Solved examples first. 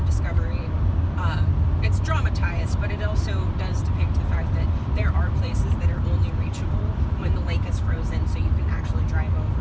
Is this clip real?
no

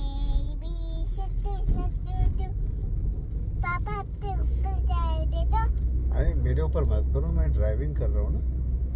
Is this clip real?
yes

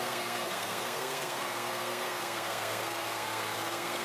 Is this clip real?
no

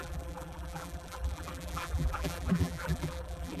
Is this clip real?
no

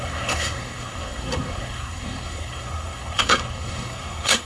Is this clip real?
no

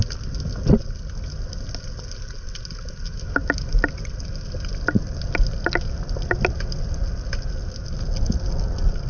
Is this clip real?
yes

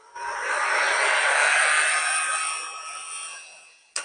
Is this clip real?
yes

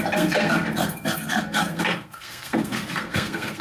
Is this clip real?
no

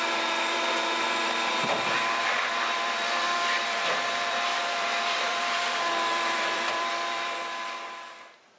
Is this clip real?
no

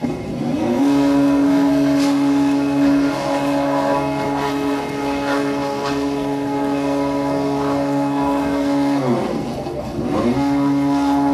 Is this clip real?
no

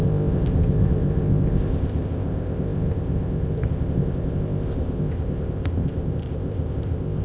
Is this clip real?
no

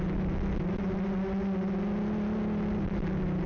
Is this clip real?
yes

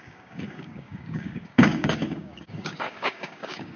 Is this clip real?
no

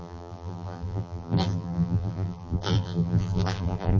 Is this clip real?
no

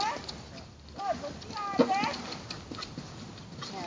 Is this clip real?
yes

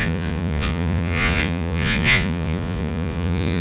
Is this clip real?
no